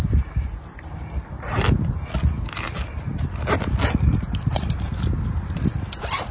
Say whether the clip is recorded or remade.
recorded